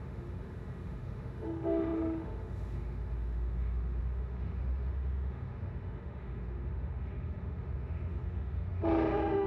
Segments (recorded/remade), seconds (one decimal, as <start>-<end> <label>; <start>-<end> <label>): 0.0-9.5 remade